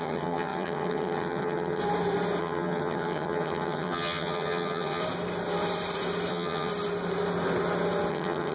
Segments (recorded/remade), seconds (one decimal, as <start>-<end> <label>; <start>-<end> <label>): 0.0-1.8 remade; 1.8-2.4 recorded; 2.4-5.0 remade; 5.0-6.3 recorded; 6.3-6.7 remade; 6.7-8.1 recorded; 8.1-8.5 remade